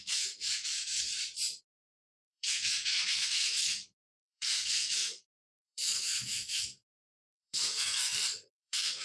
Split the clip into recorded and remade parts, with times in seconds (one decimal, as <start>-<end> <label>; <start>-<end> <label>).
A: 0.0-1.1 remade; 1.1-1.6 recorded; 1.6-9.0 remade